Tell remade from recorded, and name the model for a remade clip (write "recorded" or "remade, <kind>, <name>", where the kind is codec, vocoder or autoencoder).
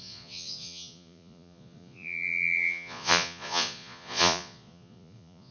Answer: remade, vocoder, Vocos